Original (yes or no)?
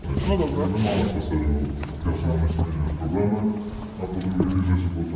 yes